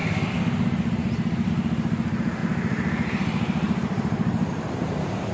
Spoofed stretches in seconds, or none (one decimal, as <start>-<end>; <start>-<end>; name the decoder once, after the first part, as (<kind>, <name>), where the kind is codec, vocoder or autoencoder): 2.4-5.3 (vocoder, BigVGAN v2)